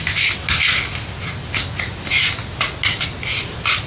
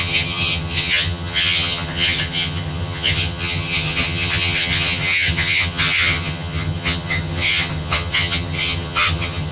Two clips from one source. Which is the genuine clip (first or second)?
first